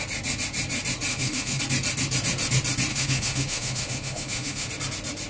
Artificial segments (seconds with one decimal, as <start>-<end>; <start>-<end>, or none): 1.1-1.6; 2.9-4.7